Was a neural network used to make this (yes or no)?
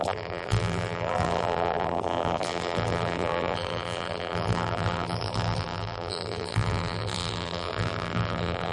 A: yes